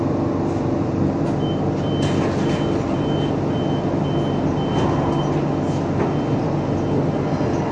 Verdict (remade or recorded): recorded